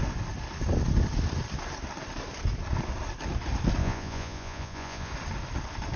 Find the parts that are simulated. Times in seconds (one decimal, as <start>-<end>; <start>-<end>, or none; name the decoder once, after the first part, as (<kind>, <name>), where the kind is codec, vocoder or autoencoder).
3.8-5.1 (vocoder, Vocos)